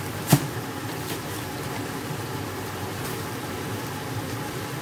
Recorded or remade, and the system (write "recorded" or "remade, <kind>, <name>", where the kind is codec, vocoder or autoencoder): remade, vocoder, BigVGAN v2